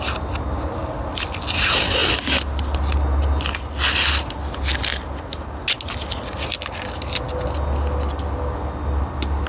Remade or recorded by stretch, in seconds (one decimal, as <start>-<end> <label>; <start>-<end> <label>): 0.0-9.5 recorded